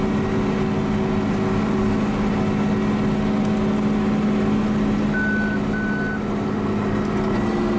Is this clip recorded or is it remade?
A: recorded